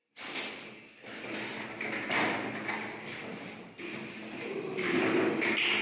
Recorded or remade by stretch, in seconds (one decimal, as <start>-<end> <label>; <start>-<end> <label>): 0.0-3.4 remade; 3.4-5.8 recorded